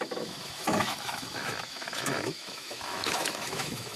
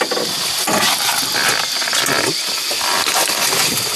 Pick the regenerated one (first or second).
first